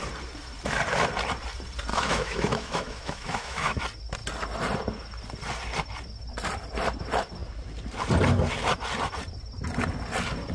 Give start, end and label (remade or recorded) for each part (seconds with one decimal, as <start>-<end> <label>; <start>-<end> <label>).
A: 0.0-1.9 recorded; 1.9-3.8 remade; 3.8-10.5 recorded